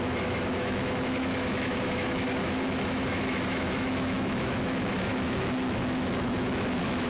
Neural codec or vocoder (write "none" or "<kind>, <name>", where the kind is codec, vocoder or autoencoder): autoencoder, DAC-VAE